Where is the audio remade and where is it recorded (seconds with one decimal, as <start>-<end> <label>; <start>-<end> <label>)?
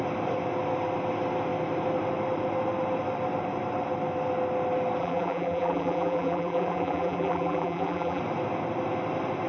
0.0-5.0 recorded; 5.0-8.2 remade; 8.2-9.5 recorded